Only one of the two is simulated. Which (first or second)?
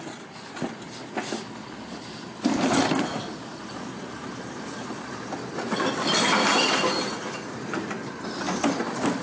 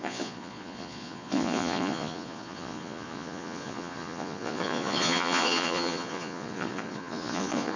second